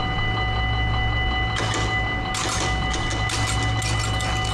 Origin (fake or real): real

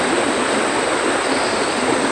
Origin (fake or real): real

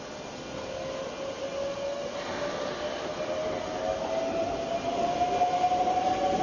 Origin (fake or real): real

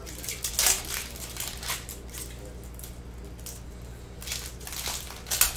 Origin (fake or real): real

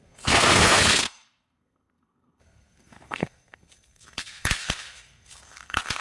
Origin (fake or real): fake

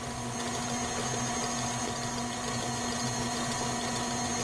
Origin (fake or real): real